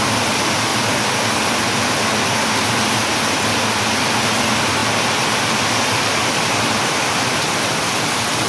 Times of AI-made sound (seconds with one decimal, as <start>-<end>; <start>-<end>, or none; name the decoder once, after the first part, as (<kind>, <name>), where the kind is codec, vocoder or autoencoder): none